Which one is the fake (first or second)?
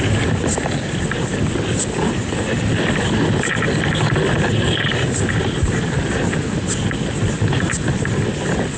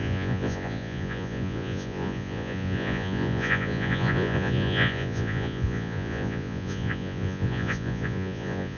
second